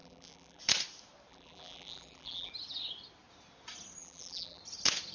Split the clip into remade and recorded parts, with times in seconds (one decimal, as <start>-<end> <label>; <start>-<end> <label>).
0.0-0.6 remade; 0.6-1.3 recorded; 1.3-2.5 remade; 2.5-4.0 recorded; 4.0-4.6 remade; 4.6-5.1 recorded